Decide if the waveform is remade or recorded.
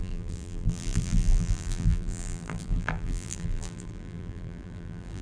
remade